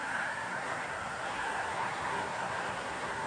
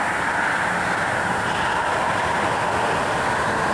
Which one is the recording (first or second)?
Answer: second